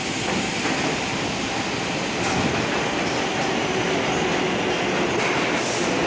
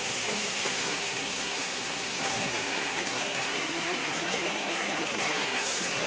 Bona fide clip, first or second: first